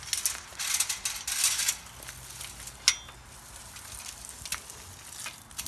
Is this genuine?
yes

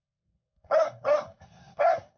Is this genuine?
no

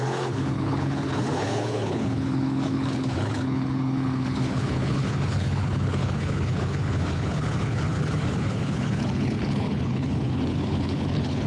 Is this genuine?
no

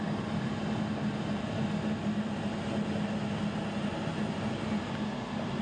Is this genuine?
yes